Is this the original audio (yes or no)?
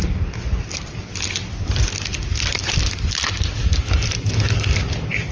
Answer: no